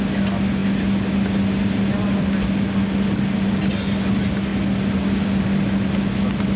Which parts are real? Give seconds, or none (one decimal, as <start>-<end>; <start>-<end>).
0.0-6.6